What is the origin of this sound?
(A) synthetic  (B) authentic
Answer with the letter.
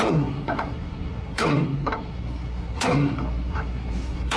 A